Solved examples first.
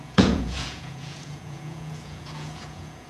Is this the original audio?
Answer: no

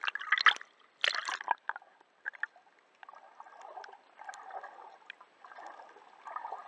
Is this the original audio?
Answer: yes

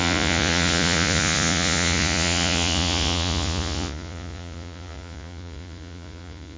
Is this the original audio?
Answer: no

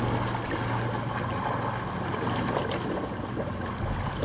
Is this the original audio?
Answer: yes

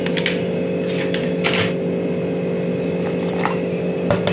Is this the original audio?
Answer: yes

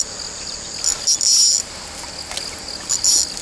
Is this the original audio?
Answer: yes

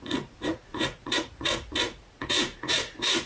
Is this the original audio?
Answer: no